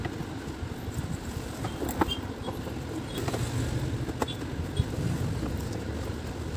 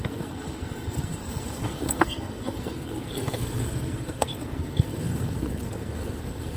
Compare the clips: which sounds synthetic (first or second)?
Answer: second